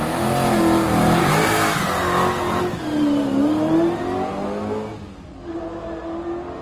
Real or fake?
real